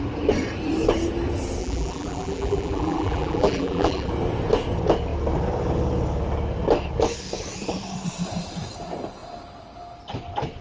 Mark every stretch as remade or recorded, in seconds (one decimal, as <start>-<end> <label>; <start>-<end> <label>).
0.0-1.6 recorded; 1.6-4.1 remade; 4.1-10.6 recorded